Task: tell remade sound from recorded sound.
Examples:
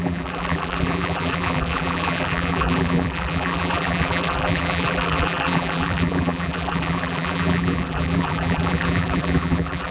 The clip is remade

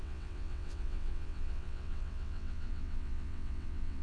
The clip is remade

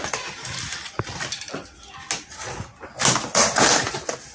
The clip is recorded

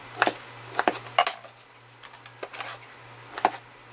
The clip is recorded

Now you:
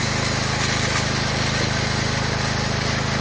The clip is recorded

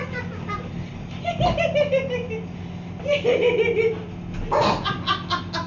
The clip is recorded